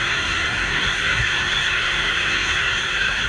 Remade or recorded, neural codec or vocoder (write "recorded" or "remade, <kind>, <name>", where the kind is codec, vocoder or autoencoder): remade, codec, SNAC